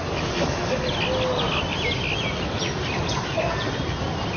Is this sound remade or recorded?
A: recorded